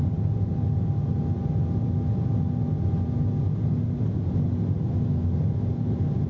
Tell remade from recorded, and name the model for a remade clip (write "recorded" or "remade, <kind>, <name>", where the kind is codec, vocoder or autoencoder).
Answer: recorded